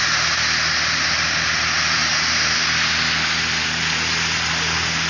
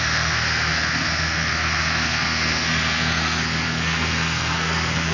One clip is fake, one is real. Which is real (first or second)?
first